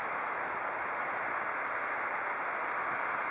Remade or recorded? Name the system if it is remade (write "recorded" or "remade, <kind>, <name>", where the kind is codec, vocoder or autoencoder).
recorded